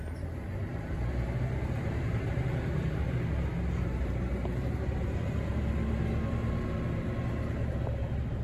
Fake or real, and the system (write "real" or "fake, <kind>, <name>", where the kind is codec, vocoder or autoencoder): fake, vocoder, BigVGAN v2